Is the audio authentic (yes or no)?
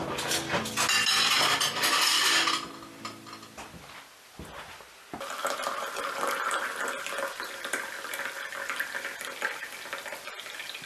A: yes